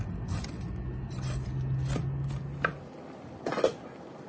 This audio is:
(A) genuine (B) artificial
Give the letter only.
A